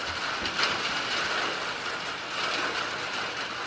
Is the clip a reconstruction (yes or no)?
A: no